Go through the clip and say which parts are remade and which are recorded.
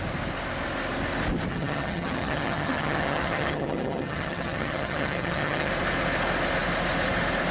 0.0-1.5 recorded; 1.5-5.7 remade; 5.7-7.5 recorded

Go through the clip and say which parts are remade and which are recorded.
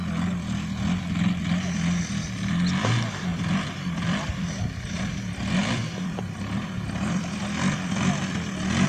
0.0-3.3 recorded; 3.3-5.0 remade; 5.0-5.6 recorded; 5.6-7.4 remade; 7.4-8.9 recorded